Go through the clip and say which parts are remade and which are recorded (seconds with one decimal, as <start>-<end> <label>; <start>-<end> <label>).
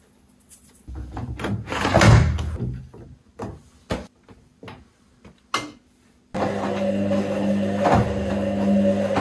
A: 0.0-9.2 recorded